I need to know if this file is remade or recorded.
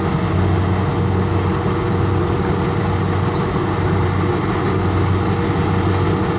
recorded